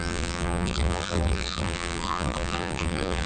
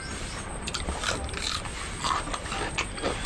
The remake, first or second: first